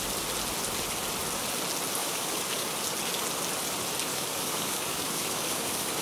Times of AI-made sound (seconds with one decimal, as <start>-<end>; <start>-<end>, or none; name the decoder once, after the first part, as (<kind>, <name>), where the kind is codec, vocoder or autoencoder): 2.0-2.7 (codec, DAC); 4.1-6.0